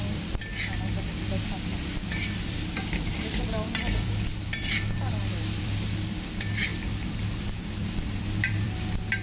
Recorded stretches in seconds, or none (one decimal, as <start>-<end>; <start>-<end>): 0.5-2.1; 6.7-7.4